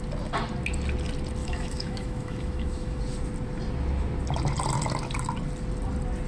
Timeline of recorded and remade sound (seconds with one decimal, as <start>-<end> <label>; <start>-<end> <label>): 0.0-1.4 recorded; 1.4-3.0 remade; 3.0-6.3 recorded